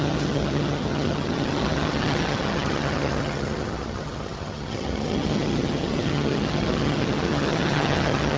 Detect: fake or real fake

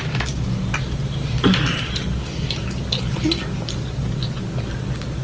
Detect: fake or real real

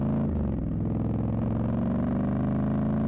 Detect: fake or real real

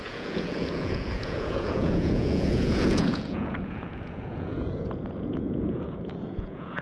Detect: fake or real fake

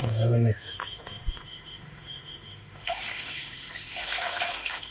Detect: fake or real fake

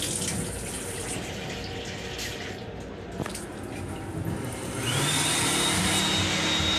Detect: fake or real real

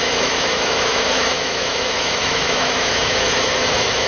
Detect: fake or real fake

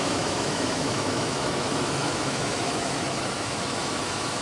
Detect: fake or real fake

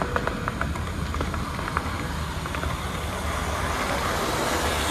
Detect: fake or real real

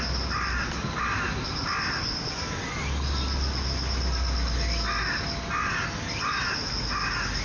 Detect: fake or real real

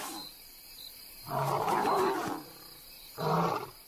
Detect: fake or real real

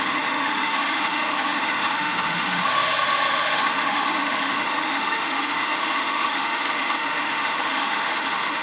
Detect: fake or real fake